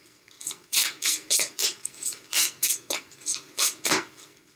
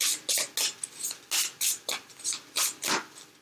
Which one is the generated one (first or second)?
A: first